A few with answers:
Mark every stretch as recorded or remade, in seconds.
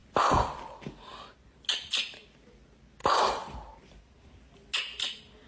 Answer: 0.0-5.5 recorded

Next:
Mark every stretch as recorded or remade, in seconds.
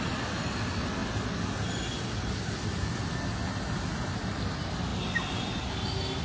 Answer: 0.0-4.9 recorded; 4.9-5.8 remade; 5.8-6.2 recorded